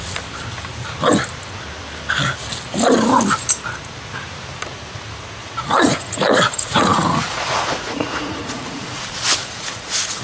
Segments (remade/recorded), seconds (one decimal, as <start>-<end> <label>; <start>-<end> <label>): 0.0-5.4 recorded; 5.4-9.0 remade; 9.0-9.4 recorded; 9.4-10.2 remade